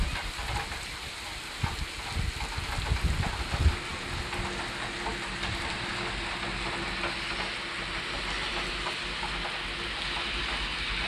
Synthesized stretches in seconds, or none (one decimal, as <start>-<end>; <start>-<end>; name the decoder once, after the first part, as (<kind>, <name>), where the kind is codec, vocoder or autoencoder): none